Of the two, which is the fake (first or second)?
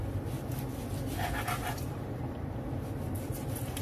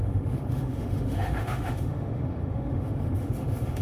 second